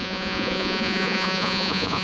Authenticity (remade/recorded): remade